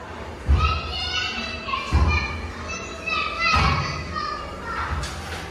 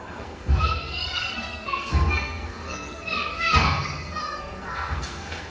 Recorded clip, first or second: first